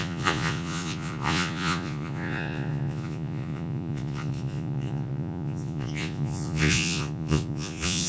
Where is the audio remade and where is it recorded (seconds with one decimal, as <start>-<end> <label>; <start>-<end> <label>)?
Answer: 0.0-8.1 remade